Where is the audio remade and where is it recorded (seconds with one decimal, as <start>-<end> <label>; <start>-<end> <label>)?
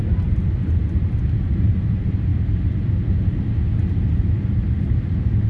0.0-2.3 remade; 2.3-4.8 recorded; 4.8-5.5 remade